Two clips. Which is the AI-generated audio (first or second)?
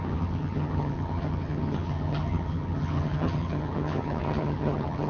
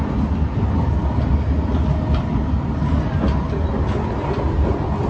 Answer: first